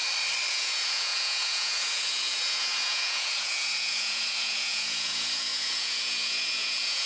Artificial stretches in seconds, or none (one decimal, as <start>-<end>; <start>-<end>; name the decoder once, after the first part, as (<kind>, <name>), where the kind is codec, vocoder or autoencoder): 0.5-7.1 (vocoder, Vocos)

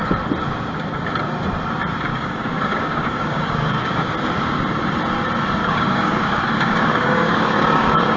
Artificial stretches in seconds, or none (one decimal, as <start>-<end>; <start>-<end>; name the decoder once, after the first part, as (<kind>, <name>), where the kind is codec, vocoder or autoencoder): 2.1-4.1 (codec, DAC); 5.6-8.2

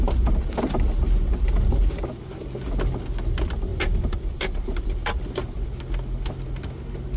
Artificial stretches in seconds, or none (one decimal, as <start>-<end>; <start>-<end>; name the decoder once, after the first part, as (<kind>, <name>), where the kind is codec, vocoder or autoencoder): 1.3-2.0 (vocoder, BigVGAN v2); 3.7-5.9